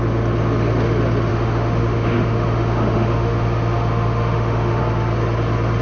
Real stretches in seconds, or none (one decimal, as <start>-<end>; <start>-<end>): 0.0-1.3; 4.8-5.8